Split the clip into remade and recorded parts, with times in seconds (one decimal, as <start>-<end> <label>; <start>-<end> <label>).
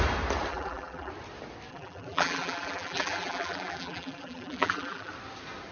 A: 0.0-0.5 recorded; 0.5-1.1 remade; 1.1-1.7 recorded; 1.7-5.1 remade; 5.1-5.7 recorded